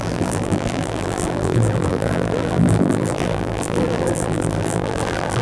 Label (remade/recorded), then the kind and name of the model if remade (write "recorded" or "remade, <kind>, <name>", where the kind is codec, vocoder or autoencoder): remade, vocoder, BigVGAN v2